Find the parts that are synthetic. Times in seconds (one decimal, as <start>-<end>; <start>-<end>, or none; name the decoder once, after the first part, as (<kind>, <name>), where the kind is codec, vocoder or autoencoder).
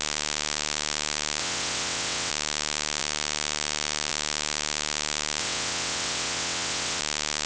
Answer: 1.4-2.3 (vocoder, WaveNeXt); 5.4-7.0